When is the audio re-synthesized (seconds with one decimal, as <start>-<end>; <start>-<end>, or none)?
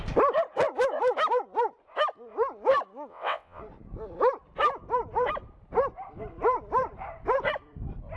3.1-3.6